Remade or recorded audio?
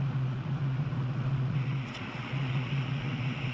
remade